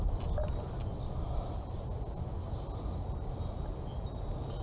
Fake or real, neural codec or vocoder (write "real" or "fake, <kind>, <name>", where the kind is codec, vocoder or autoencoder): real